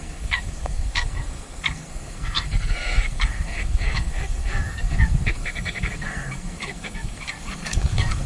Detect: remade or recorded remade